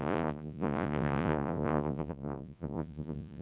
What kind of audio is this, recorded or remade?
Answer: remade